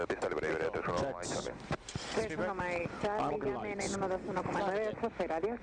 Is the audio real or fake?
real